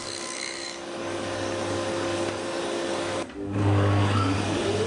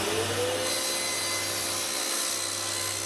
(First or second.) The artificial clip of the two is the first